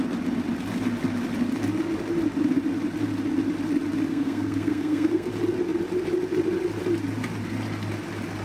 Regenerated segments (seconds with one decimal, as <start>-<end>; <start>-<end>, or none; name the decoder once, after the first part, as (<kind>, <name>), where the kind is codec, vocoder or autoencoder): 4.1-5.3 (codec, SNAC)